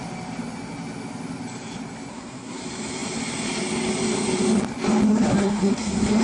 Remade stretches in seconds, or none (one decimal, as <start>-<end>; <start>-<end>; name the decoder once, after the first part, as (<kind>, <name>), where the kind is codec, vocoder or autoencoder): 2.1-2.6 (codec, SNAC); 5.1-6.2